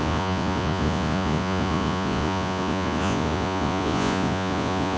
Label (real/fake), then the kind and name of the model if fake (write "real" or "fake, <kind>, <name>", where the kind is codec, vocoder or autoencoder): fake, vocoder, Vocos